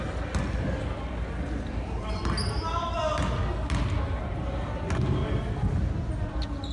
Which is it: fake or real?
real